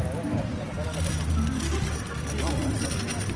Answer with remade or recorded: recorded